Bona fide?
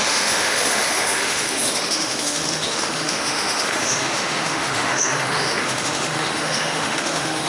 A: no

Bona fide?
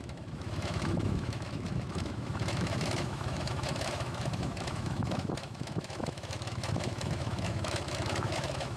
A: no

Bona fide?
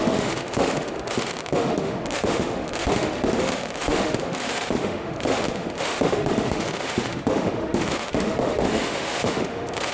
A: no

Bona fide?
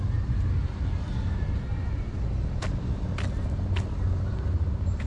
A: yes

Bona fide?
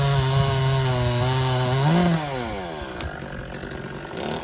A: yes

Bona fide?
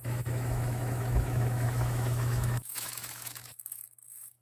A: no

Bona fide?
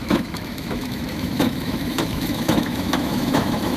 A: no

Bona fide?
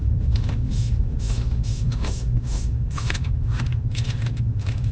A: no